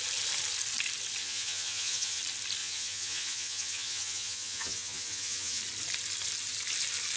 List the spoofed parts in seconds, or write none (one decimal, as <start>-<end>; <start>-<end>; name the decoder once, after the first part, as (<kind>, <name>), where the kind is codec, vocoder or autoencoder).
1.2-2.2 (vocoder, Vocos); 2.6-5.6